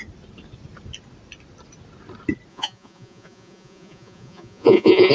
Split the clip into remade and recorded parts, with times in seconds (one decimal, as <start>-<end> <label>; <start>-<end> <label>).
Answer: 0.0-2.5 recorded; 2.5-5.1 remade